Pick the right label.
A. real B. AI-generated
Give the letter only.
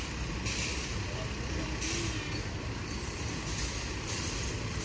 A